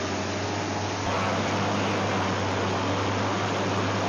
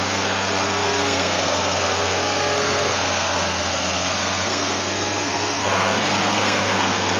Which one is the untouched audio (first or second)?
first